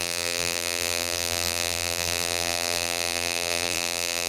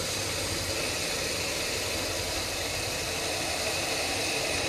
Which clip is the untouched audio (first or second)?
second